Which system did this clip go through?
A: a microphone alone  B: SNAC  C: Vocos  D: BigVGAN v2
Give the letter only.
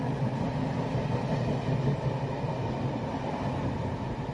A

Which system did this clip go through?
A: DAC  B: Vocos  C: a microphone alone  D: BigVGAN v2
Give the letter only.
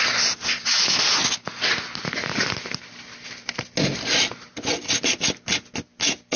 C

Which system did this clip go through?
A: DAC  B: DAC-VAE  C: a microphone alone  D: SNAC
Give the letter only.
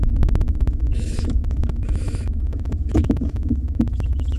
B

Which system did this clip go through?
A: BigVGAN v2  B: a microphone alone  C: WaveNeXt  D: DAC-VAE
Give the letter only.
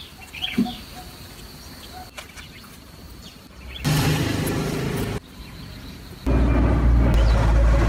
B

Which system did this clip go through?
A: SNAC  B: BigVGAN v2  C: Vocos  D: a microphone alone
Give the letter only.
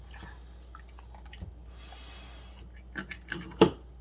D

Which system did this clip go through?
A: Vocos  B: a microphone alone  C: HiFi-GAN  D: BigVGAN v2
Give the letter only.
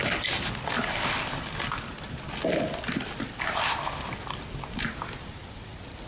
B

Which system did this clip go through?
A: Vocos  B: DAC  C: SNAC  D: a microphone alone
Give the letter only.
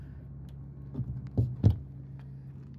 D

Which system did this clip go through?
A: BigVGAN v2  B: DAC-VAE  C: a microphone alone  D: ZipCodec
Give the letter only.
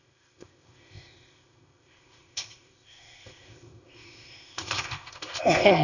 D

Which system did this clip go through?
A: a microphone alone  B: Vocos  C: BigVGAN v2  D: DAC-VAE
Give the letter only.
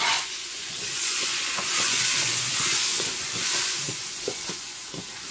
B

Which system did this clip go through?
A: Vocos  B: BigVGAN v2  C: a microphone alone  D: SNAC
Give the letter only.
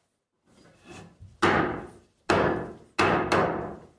C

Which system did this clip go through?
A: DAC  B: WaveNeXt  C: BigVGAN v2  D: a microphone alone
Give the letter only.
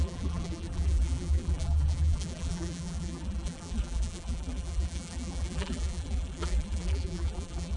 C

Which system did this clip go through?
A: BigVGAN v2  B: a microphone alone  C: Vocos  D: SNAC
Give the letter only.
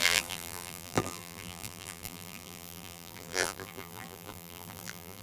A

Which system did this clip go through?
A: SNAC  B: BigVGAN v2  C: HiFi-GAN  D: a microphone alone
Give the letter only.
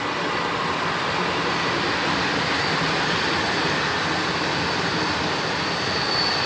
D